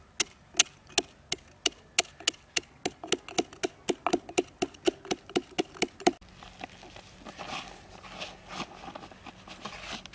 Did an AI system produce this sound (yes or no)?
no